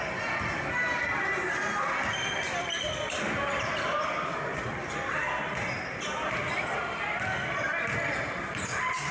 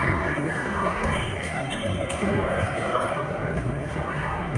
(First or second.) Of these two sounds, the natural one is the first